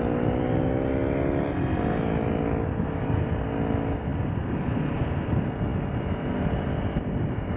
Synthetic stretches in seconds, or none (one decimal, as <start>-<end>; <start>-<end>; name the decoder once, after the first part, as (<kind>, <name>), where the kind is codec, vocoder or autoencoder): none